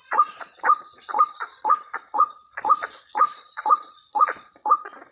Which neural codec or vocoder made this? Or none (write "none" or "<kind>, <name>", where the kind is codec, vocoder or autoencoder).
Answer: vocoder, Vocos